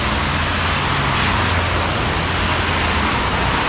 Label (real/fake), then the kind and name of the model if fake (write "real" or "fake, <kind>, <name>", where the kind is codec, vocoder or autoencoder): real